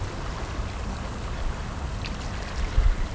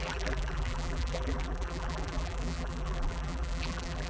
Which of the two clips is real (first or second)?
first